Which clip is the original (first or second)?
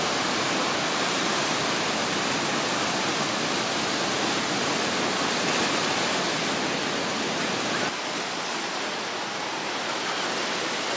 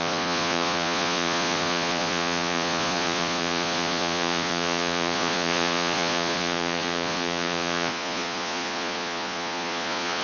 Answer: first